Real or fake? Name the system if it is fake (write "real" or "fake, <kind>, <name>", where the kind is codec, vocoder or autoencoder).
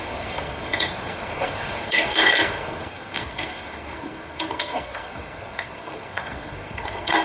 fake, codec, SNAC